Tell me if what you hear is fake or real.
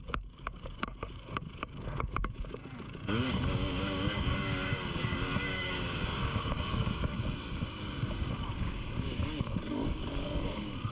fake